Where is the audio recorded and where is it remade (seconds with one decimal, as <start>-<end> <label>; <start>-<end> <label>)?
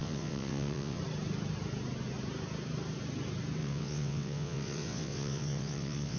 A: 0.0-1.0 remade; 1.0-3.6 recorded; 3.6-6.2 remade